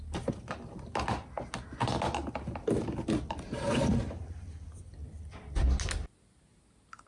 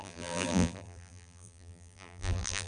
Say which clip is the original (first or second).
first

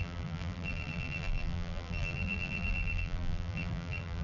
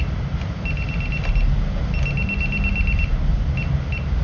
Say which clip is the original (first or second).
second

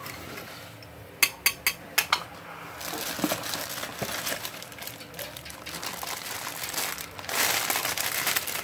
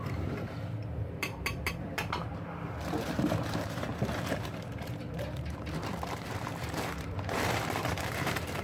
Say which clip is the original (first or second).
first